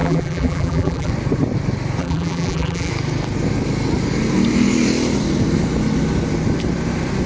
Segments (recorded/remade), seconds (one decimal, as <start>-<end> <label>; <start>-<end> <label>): 0.0-1.1 remade; 1.1-2.0 recorded; 2.0-2.9 remade; 2.9-7.3 recorded